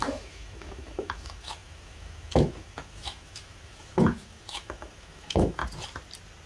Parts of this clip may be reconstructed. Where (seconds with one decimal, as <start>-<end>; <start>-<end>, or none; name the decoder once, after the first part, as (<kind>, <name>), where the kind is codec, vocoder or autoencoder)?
0.0-5.6 (autoencoder, DAC-VAE)